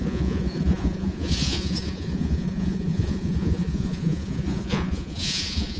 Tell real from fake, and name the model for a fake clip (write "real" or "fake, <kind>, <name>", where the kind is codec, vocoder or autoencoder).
fake, vocoder, Vocos